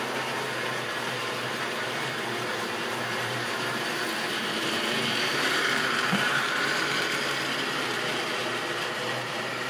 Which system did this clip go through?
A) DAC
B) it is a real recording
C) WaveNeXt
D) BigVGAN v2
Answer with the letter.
D